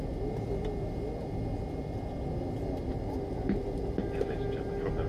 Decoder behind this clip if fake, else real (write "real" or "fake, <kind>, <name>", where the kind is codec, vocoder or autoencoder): real